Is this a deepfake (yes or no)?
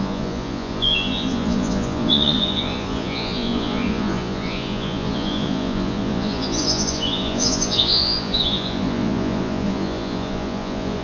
yes